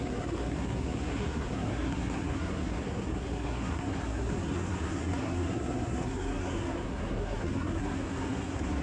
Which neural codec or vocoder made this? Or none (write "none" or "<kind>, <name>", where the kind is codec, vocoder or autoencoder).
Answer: codec, SNAC